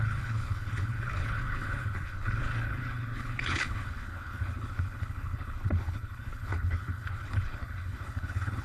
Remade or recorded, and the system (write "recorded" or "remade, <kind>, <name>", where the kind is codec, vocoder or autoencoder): remade, codec, HILCodec